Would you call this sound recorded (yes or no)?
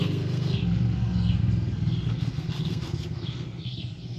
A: no